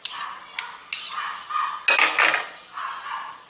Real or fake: real